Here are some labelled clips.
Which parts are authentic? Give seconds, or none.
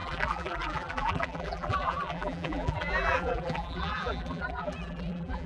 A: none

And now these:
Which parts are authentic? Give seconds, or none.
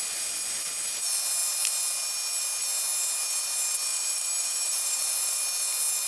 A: 0.0-3.9; 5.4-6.1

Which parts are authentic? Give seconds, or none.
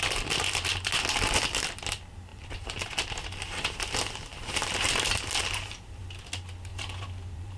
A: 0.0-2.3; 2.9-4.3; 6.0-6.7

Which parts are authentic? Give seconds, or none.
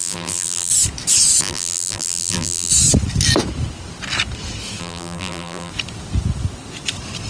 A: 0.7-1.4; 2.7-4.8; 5.7-7.3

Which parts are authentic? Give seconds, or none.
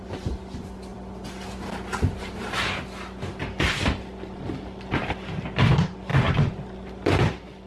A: 0.0-0.9; 2.7-7.7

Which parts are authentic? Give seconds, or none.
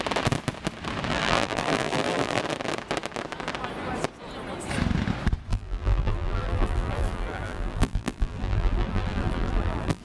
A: 0.0-1.1; 2.4-5.5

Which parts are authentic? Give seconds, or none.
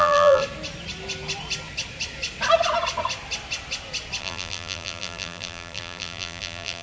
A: 0.4-4.2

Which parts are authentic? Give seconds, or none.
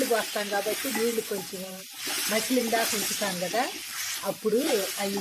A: 0.0-0.9; 2.6-3.8